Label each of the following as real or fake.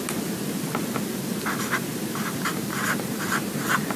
real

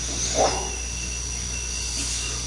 real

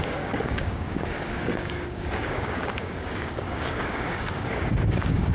fake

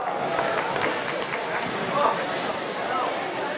real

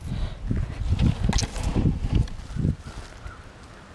real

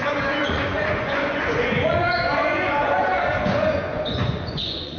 fake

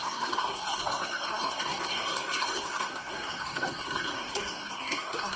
fake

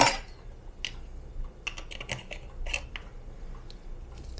real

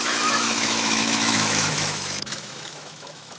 fake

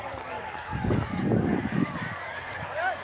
fake